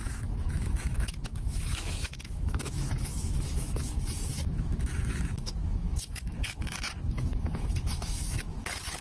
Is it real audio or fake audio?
fake